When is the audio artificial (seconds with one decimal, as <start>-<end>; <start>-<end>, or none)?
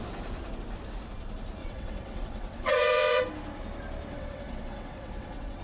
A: 1.6-3.2; 4.1-5.6